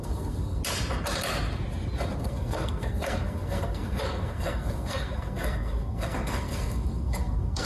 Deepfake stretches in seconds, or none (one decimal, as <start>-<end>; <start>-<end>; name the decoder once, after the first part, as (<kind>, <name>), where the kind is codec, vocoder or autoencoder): 0.0-0.6 (codec, SNAC); 2.2-7.7